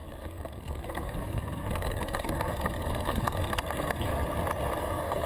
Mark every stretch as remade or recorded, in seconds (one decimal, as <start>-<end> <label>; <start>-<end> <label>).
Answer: 0.0-4.1 remade; 4.1-4.8 recorded; 4.8-5.3 remade